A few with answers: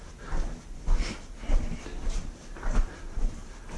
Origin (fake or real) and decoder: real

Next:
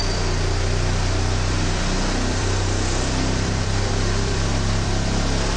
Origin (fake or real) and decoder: fake, vocoder, BigVGAN v2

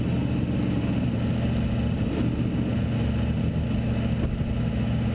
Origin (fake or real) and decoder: real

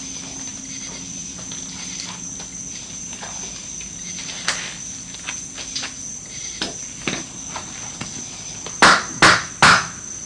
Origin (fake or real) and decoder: real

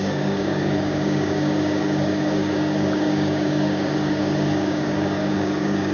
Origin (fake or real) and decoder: fake, codec, DAC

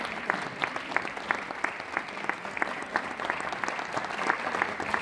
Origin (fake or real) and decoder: real